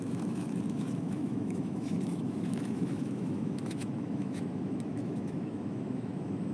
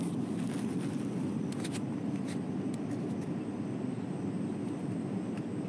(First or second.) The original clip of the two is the second